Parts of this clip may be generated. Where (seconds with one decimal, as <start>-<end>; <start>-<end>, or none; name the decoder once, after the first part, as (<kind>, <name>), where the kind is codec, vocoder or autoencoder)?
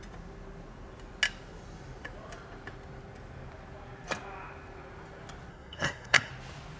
5.5-6.3 (codec, SNAC)